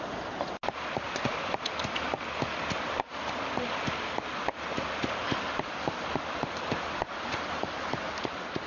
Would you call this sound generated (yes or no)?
no